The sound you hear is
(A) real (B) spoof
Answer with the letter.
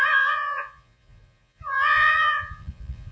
B